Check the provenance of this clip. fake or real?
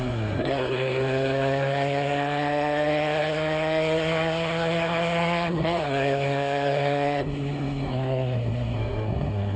fake